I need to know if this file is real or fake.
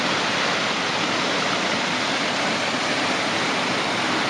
real